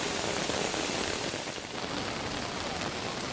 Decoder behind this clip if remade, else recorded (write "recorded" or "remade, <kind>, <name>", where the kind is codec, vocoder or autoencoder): recorded